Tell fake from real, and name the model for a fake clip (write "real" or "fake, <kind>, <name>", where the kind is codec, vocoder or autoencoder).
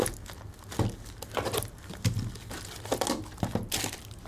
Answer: real